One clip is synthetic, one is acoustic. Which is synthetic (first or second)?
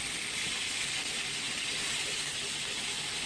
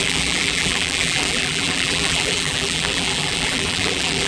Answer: second